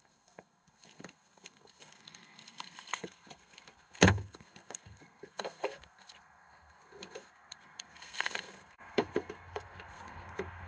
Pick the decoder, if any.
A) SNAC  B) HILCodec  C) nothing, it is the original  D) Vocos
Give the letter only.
A